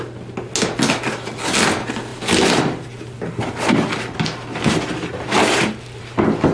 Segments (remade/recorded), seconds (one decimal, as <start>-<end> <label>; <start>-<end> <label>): 0.0-6.5 recorded